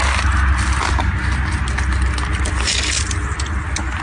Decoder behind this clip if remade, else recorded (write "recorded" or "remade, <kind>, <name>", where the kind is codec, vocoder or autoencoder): recorded